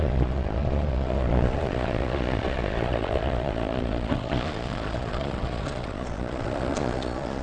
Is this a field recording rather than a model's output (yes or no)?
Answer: no